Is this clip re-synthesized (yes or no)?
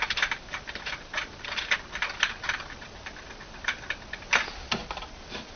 no